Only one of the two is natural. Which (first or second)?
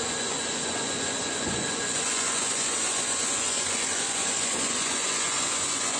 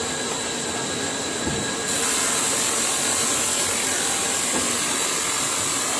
second